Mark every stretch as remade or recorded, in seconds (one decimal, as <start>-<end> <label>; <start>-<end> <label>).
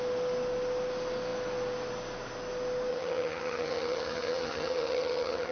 0.0-2.9 recorded; 2.9-5.5 remade